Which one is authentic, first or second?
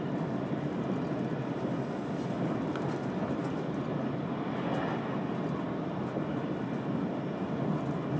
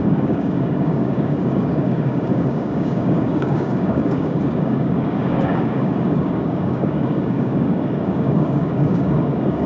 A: first